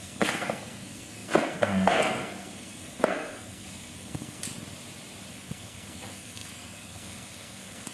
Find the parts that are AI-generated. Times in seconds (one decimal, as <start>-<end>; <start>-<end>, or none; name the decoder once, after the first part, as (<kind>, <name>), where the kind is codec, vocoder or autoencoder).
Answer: 0.0-4.4 (codec, SNAC); 5.3-7.9